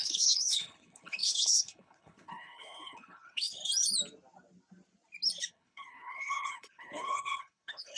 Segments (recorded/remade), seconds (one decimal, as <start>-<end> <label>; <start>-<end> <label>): 0.0-3.6 remade; 3.6-5.5 recorded; 5.5-8.0 remade